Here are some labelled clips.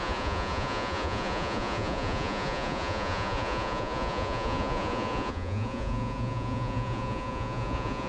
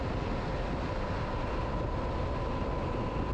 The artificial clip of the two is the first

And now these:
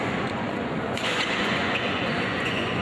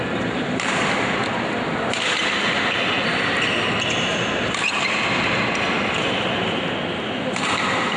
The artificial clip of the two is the first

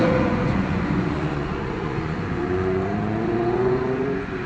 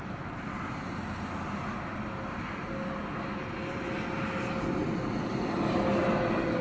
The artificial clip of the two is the first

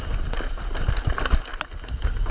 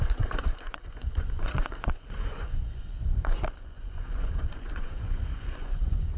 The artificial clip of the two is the second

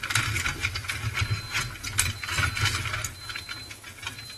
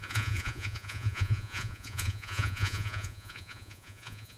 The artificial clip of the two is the second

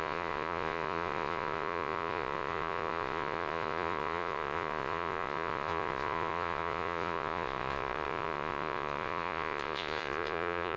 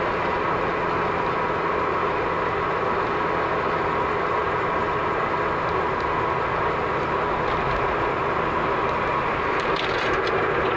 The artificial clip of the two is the first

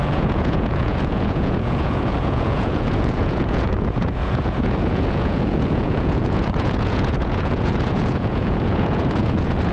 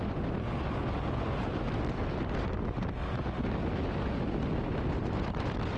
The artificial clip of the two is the first